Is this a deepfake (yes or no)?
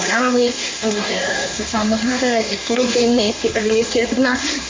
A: yes